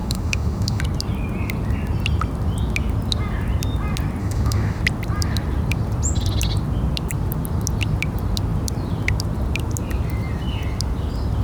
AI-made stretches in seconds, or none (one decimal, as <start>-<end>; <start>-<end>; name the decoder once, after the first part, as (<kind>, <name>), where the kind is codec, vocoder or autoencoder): 0.0-0.8 (autoencoder, DAC-VAE); 4.2-4.8